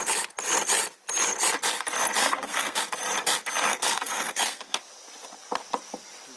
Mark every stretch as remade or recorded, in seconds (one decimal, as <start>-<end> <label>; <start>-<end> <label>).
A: 0.0-2.2 recorded; 2.2-2.8 remade; 2.8-3.7 recorded; 3.7-4.8 remade; 4.8-6.4 recorded